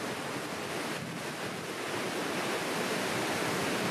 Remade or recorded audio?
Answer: recorded